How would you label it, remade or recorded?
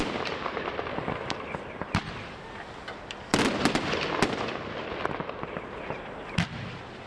recorded